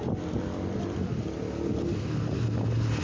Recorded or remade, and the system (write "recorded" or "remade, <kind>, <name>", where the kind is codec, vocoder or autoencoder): recorded